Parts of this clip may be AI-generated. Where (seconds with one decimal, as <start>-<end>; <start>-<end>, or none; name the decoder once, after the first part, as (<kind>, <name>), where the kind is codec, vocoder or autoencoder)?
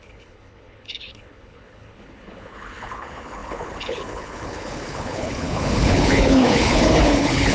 0.0-7.5 (codec, HILCodec)